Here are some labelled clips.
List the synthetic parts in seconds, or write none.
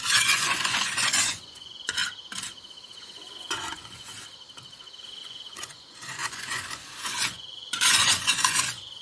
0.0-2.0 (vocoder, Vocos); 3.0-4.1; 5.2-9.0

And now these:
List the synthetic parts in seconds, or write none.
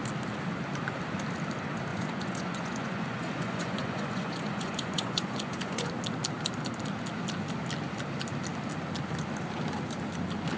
1.9-5.9 (vocoder, Vocos)